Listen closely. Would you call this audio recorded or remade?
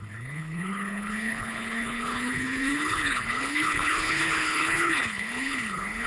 remade